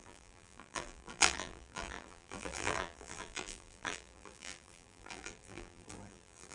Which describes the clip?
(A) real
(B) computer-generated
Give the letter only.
B